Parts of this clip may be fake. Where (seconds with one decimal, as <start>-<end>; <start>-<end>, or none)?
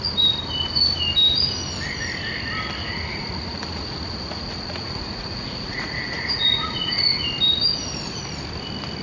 2.8-6.9